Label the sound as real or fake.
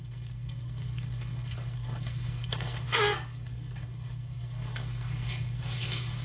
fake